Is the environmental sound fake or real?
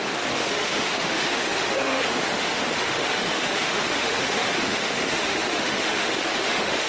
fake